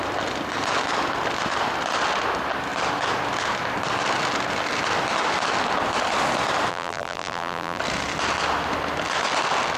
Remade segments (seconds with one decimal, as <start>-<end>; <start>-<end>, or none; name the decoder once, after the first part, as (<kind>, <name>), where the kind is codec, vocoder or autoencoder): 6.7-7.8 (vocoder, BigVGAN v2)